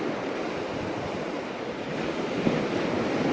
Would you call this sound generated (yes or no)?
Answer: no